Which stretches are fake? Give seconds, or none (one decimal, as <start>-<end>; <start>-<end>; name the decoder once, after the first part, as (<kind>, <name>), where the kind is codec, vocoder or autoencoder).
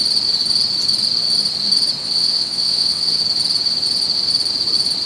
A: 2.0-3.2 (vocoder, WaveNeXt)